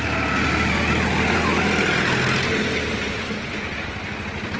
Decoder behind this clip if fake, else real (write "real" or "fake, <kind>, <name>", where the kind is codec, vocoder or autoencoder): real